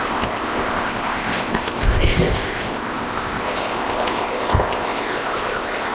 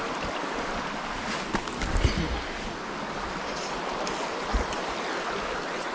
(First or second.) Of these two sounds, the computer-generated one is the first